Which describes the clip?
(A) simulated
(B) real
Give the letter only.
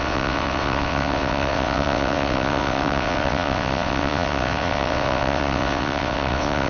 A